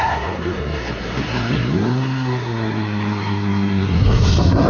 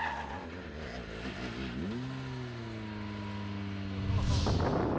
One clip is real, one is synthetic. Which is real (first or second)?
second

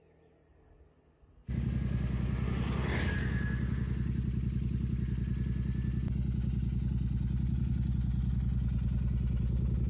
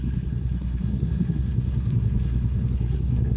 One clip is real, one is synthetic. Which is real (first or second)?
first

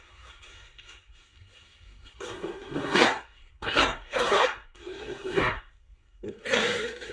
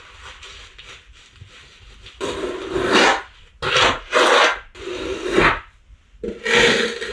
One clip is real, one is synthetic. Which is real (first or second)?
second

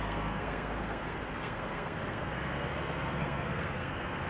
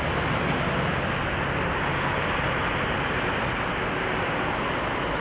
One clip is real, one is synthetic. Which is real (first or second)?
second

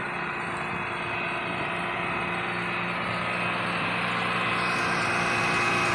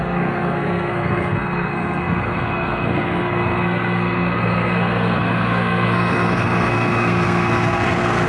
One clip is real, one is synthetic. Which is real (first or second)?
first